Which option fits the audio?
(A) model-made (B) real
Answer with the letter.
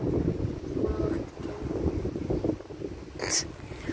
B